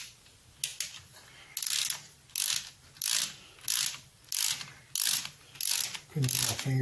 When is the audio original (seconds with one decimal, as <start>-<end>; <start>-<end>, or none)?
0.0-6.8